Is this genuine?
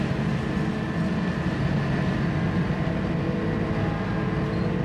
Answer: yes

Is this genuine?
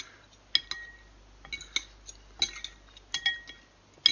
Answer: yes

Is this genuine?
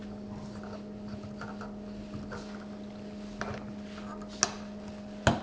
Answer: yes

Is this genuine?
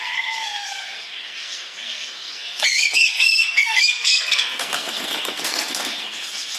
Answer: no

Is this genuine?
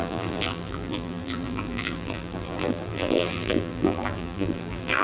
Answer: no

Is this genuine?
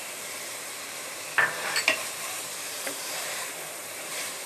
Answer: no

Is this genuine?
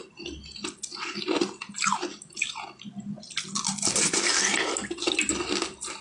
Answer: yes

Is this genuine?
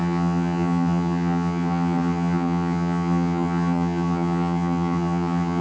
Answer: no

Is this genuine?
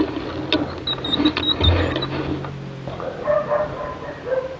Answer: yes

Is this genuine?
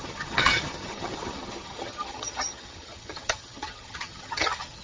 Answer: no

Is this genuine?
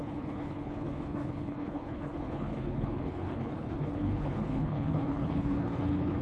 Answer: no